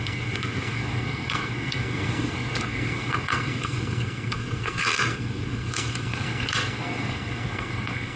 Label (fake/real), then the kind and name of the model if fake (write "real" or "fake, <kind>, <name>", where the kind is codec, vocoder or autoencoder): fake, codec, SNAC